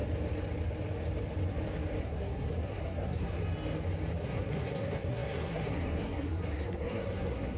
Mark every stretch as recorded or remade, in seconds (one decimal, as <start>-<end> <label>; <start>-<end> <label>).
0.0-2.0 recorded; 2.0-3.4 remade; 3.4-4.2 recorded; 4.2-7.6 remade